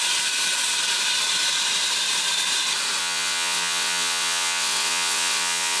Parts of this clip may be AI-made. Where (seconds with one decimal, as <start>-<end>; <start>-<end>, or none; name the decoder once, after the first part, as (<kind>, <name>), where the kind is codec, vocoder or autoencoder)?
3.0-5.8 (vocoder, WaveNeXt)